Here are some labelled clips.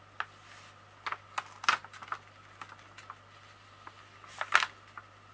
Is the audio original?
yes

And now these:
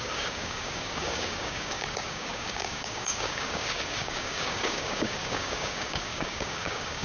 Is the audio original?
no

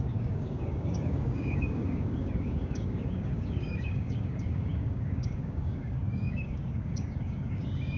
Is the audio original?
no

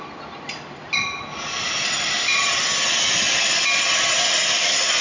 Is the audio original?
yes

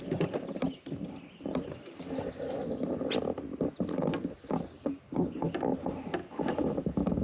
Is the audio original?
yes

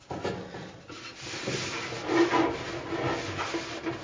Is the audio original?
yes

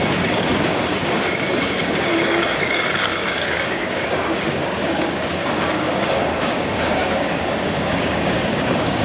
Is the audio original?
no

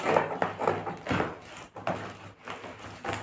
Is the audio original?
yes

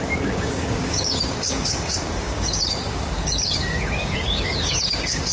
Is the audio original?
no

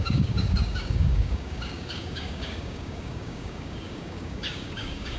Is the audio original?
no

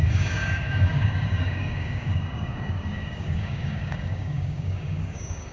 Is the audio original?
no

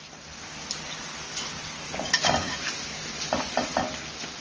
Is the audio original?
yes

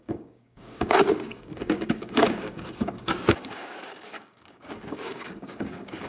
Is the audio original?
no